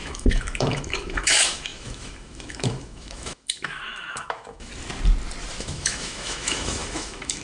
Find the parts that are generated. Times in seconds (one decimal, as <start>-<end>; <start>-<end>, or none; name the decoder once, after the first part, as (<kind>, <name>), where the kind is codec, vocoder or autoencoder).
0.0-4.7 (autoencoder, DAC-VAE); 5.6-7.4